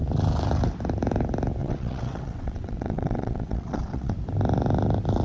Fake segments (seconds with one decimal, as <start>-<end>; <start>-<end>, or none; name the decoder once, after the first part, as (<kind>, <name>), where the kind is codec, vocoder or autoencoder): 1.6-4.1 (vocoder, WaveNeXt)